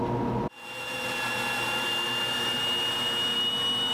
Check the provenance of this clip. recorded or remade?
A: recorded